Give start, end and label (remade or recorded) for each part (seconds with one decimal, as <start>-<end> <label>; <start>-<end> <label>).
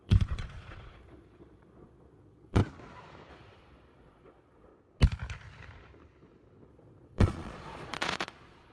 0.0-2.6 remade; 2.6-3.3 recorded; 3.3-4.7 remade; 4.7-6.7 recorded; 6.7-8.7 remade